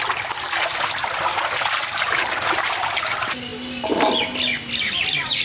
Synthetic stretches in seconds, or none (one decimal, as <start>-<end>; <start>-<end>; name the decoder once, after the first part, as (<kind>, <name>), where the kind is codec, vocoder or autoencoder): none

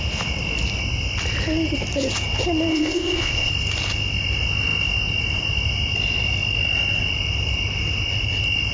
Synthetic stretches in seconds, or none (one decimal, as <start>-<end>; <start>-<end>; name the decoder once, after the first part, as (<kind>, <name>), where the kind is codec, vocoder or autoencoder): 2.7-3.5 (codec, ZipCodec)

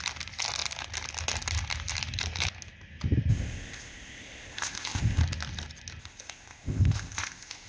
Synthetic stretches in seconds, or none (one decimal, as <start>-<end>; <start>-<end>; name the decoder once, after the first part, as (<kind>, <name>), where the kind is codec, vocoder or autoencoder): 3.3-5.2 (codec, ZipCodec); 6.0-7.7